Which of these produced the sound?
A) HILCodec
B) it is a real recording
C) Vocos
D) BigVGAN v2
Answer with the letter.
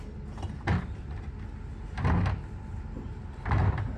B